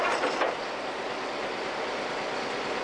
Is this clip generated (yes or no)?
no